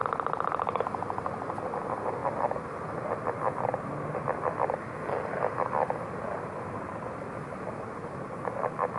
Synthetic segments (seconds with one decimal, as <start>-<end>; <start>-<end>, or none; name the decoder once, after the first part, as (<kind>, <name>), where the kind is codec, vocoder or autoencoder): none